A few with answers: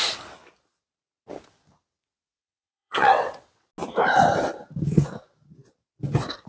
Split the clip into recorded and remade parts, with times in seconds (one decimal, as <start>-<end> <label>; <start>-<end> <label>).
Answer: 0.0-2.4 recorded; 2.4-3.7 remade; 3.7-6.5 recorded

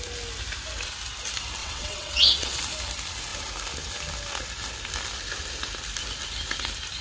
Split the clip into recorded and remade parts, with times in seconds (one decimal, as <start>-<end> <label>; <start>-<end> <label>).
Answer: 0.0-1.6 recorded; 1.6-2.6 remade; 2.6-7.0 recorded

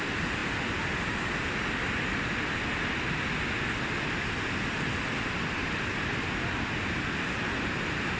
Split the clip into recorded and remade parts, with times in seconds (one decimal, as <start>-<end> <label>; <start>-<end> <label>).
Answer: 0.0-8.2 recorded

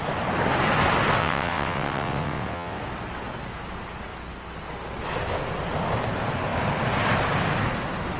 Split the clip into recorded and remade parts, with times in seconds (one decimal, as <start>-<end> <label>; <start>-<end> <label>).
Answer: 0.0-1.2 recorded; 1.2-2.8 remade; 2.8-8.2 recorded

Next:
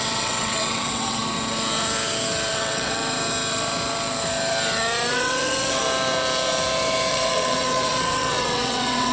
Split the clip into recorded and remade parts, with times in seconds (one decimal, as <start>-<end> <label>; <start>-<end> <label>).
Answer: 0.0-1.2 remade; 1.2-2.5 recorded; 2.5-3.0 remade; 3.0-5.1 recorded; 5.1-5.8 remade; 5.8-7.1 recorded; 7.1-9.1 remade